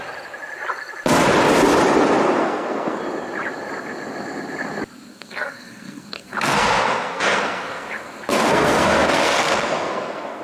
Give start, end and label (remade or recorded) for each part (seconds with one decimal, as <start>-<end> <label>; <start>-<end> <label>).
0.0-2.4 recorded; 2.4-3.0 remade; 3.0-5.1 recorded; 5.1-10.4 remade